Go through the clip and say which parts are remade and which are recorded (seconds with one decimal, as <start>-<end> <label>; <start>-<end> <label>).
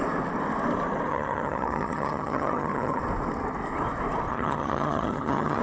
0.0-1.1 recorded; 1.1-3.0 remade; 3.0-4.3 recorded; 4.3-5.6 remade